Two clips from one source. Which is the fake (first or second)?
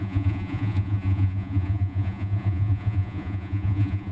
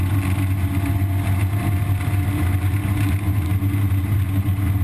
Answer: first